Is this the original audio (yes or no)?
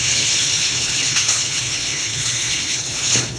no